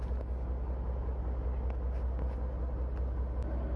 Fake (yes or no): no